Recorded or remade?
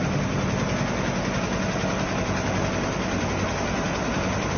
recorded